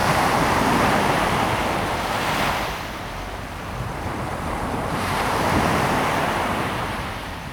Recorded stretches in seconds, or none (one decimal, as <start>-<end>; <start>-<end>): none